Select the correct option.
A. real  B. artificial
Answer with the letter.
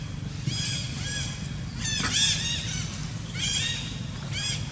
A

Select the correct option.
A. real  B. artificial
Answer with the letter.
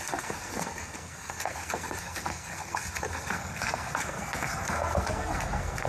B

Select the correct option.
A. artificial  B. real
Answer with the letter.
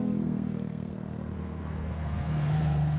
A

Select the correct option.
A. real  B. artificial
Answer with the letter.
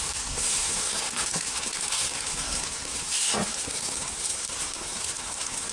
B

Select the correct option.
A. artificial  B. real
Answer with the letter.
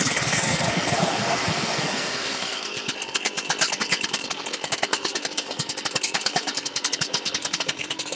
A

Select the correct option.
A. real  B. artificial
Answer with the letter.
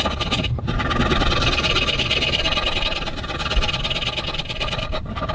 A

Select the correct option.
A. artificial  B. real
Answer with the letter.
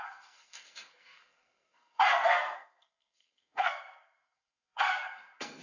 A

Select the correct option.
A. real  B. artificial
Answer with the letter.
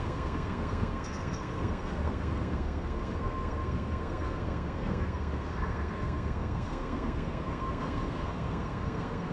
B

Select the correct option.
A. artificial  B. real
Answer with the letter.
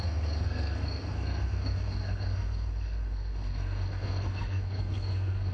A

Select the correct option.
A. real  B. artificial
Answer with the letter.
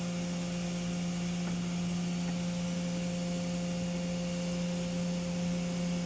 A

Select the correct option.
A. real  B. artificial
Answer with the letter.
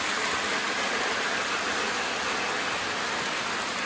A